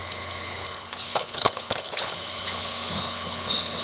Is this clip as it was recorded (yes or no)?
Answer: no